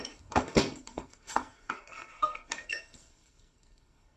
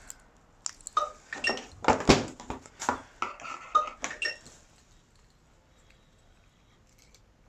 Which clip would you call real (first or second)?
second